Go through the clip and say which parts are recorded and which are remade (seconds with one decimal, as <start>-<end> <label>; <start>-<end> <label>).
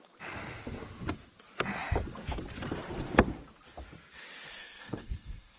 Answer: 0.0-4.6 recorded; 4.6-5.6 remade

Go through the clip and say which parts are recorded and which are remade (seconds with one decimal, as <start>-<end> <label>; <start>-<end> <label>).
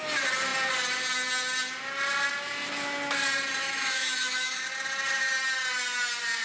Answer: 0.0-3.6 recorded; 3.6-4.6 remade; 4.6-6.4 recorded